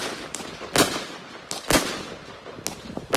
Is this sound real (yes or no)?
yes